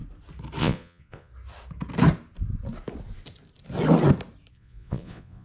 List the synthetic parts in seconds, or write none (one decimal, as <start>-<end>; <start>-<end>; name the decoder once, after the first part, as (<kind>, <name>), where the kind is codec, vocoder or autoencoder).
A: 0.6-1.3 (vocoder, Vocos); 4.5-5.4